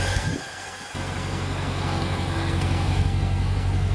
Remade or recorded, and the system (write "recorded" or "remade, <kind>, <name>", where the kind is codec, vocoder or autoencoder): remade, codec, SNAC